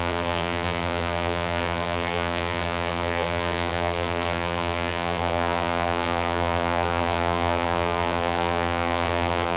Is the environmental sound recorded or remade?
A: remade